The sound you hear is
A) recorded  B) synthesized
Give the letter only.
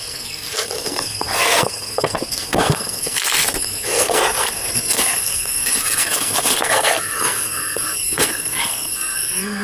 B